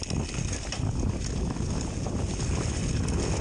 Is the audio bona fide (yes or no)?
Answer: yes